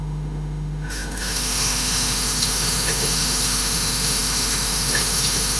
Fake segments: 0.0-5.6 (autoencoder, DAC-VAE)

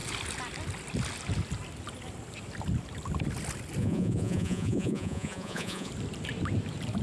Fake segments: 3.8-5.9 (vocoder, Vocos)

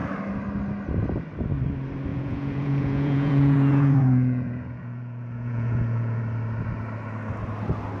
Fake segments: 2.1-6.2 (vocoder, Vocos)

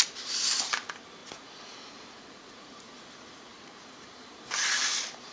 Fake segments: 1.2-4.4 (vocoder, Vocos)

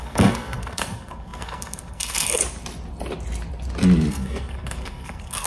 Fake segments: 0.0-2.4 (codec, SNAC); 4.1-5.5

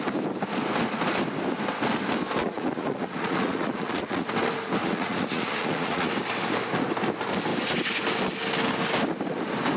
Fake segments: 2.4-4.3 (vocoder, Vocos); 4.8-6.1

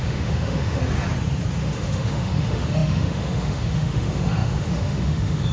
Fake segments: 0.0-0.8 (autoencoder, DAC-VAE); 1.6-5.5